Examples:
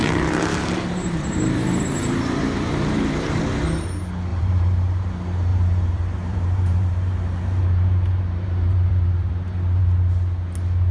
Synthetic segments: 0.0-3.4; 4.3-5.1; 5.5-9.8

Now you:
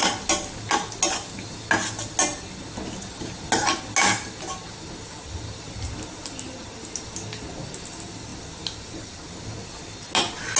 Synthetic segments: none